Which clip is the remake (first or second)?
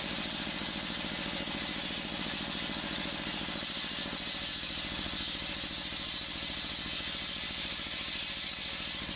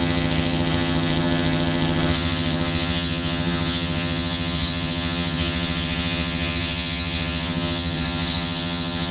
second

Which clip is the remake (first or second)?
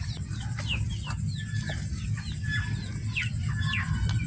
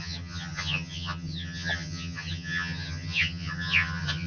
second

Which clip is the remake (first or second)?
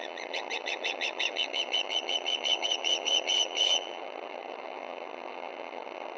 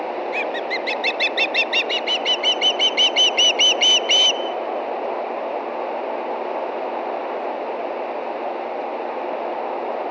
first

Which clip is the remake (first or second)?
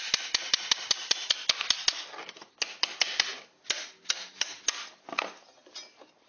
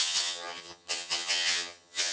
second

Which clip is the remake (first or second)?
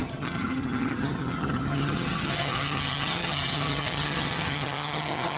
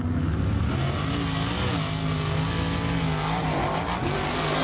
first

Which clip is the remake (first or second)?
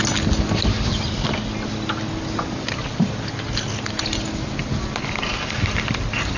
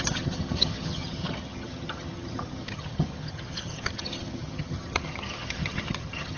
second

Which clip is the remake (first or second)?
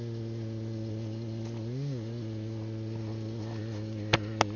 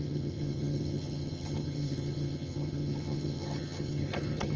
second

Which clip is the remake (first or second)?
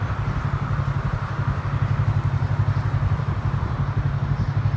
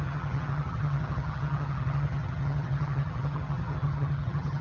second